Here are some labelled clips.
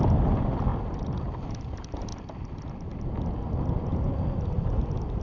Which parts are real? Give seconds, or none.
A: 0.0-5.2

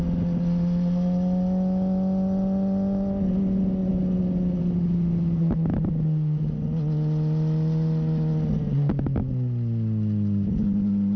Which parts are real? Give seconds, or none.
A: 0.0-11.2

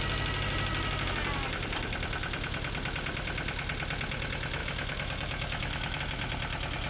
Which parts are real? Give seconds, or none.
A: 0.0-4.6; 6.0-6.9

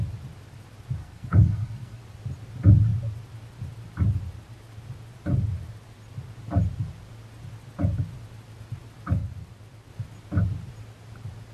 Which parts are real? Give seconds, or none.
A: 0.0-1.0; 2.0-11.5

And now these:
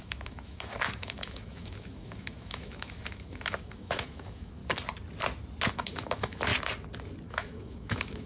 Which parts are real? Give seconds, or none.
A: 4.6-5.7; 6.5-7.3

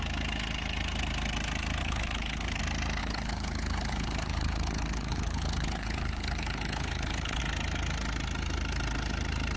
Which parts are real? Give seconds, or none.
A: 0.0-1.8; 2.6-3.0; 7.4-9.6

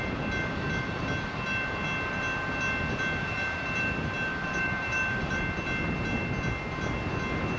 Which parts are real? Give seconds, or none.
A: 0.0-4.3; 5.4-7.6

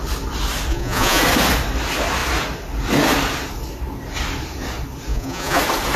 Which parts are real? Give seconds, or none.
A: 0.0-0.7; 1.2-5.1; 5.6-6.0